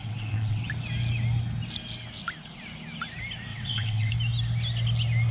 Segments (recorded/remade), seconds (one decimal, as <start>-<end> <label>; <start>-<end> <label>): 0.0-0.7 remade; 0.7-3.5 recorded; 3.5-4.1 remade; 4.1-5.3 recorded